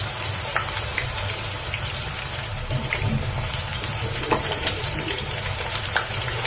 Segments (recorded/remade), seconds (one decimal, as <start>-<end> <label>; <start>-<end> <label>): 0.0-6.5 remade